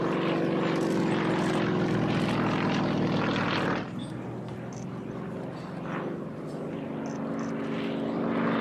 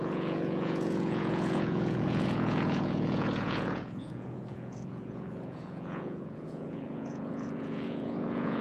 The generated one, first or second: second